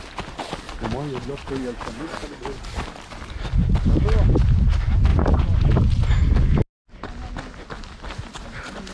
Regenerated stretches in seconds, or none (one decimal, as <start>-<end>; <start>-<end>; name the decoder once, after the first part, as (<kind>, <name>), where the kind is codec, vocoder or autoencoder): 5.1-5.7 (vocoder, Vocos)